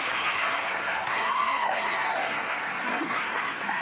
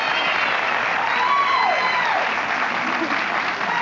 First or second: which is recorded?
second